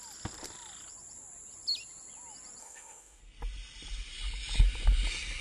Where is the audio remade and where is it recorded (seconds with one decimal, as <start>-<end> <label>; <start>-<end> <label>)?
0.0-2.6 recorded; 2.6-3.2 remade; 3.2-5.4 recorded